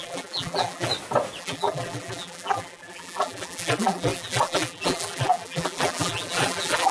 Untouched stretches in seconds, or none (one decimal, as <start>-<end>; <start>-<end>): 0.9-1.4